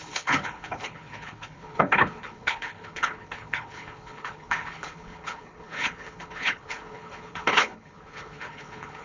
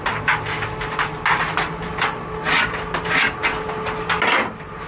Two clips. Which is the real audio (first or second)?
second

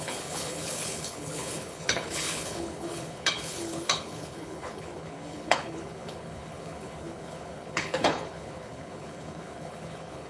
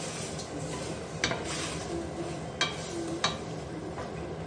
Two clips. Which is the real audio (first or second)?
second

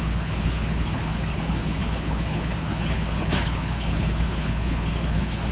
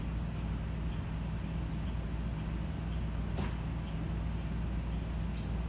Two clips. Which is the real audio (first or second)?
second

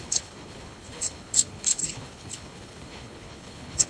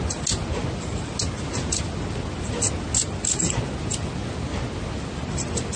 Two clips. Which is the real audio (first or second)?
second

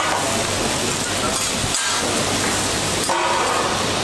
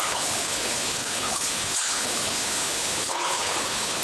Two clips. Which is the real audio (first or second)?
first